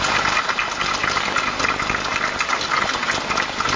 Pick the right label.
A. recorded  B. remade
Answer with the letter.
A